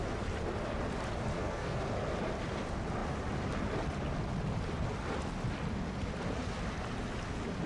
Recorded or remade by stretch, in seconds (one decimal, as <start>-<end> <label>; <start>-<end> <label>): 0.0-1.3 recorded; 1.3-1.8 remade; 1.8-7.7 recorded